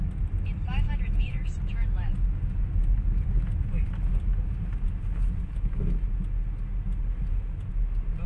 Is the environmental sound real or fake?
real